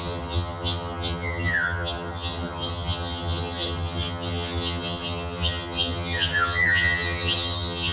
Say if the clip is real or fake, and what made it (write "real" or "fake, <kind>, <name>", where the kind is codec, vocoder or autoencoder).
fake, vocoder, HiFi-GAN